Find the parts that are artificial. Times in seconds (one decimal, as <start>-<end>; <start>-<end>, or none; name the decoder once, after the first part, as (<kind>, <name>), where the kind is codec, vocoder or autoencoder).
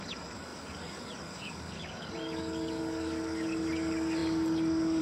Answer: 0.0-5.0 (codec, DAC)